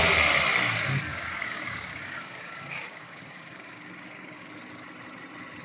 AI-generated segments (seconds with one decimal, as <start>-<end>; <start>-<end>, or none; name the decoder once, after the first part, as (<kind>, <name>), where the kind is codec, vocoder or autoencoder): 1.1-4.5 (codec, DAC)